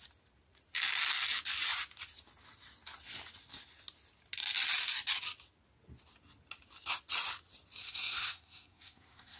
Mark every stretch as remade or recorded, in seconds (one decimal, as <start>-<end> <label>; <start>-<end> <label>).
0.0-7.8 recorded; 7.8-9.4 remade